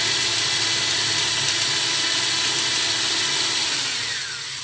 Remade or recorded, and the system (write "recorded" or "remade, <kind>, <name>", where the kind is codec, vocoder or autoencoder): recorded